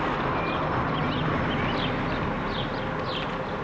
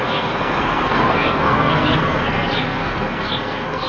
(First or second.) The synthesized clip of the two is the second